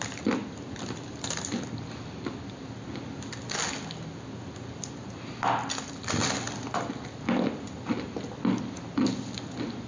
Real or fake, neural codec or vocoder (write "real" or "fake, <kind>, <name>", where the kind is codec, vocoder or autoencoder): real